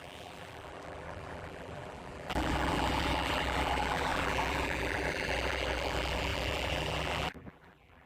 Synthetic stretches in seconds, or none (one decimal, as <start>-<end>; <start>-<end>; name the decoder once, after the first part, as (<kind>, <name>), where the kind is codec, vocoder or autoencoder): 0.0-8.1 (vocoder, BigVGAN v2)